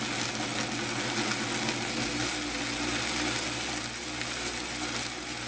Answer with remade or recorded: recorded